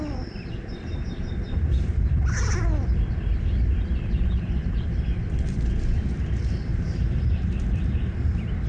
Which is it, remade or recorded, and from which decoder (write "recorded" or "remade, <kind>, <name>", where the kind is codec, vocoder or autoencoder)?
remade, vocoder, BigVGAN v2